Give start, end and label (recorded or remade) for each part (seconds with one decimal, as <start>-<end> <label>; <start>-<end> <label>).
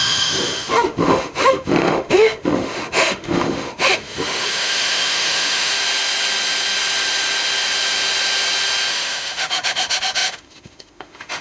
0.0-5.7 remade; 5.7-8.9 recorded; 8.9-11.4 remade